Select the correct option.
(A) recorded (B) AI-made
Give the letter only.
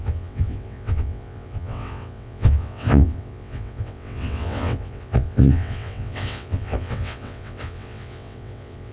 B